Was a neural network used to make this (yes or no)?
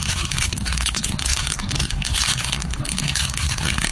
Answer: yes